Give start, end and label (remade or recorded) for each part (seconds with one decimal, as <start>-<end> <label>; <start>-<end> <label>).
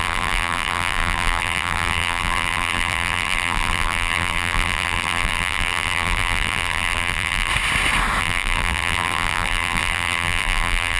0.0-7.5 remade; 7.5-8.2 recorded; 8.2-11.0 remade